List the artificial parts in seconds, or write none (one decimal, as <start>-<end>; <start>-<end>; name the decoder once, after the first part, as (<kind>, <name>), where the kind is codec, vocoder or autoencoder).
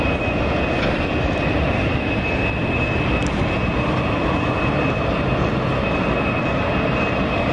none